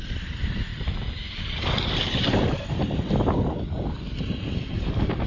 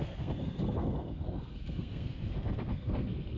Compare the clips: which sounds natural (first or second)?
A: first